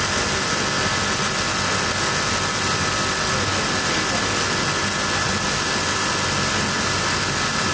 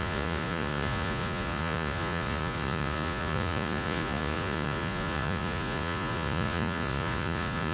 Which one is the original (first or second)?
first